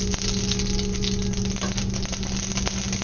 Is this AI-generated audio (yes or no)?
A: no